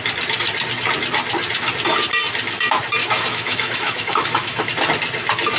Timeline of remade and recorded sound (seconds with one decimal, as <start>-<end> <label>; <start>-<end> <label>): 0.0-3.0 recorded; 3.0-4.7 remade; 4.7-5.6 recorded